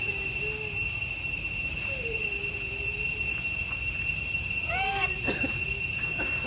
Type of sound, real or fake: fake